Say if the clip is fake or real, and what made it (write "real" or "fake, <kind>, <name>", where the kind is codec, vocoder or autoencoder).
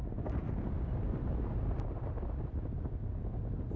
real